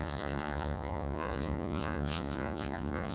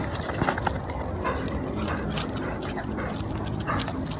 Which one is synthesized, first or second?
first